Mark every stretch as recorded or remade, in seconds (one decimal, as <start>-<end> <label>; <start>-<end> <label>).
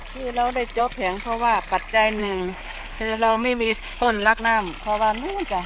0.0-2.2 recorded; 2.2-4.4 remade; 4.4-5.7 recorded